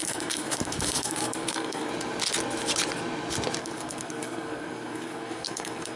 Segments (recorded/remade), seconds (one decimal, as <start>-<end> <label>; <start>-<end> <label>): 0.0-1.9 remade; 1.9-3.6 recorded; 3.6-6.0 remade